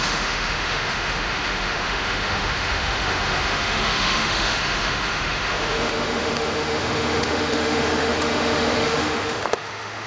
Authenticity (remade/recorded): remade